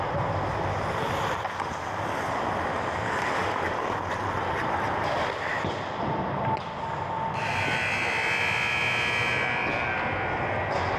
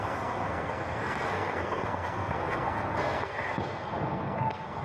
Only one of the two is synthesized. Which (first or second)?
second